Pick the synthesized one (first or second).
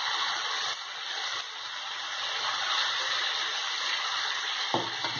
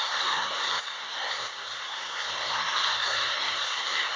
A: second